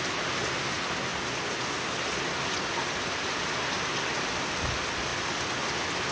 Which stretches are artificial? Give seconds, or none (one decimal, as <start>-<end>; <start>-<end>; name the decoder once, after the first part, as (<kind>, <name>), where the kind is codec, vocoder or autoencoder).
none